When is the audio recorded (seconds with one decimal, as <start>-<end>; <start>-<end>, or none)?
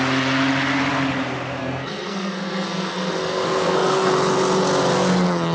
0.0-1.6; 4.1-5.5